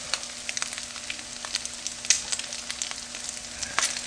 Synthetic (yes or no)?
no